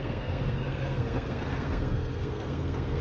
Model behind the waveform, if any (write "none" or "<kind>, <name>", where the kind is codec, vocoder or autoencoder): codec, SNAC